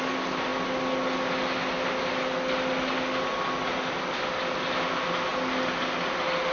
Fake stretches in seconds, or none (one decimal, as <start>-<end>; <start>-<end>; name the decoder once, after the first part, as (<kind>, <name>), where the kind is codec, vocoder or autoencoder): none